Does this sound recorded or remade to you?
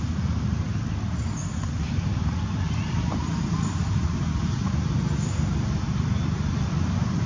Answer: remade